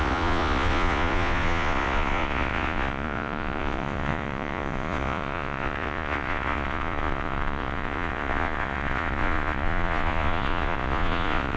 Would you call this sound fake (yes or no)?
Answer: yes